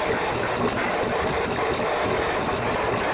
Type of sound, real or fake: real